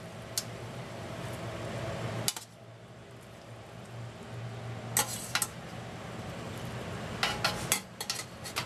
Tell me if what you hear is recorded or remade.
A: recorded